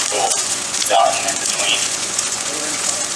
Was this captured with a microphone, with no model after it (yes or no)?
no